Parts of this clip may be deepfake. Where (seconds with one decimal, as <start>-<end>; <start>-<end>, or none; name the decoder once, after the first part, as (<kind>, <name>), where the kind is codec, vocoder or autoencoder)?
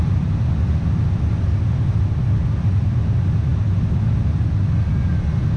none